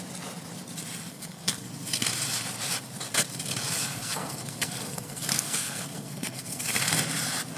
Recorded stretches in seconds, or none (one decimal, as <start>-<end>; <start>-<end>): 0.0-1.1; 1.7-3.8; 6.7-7.6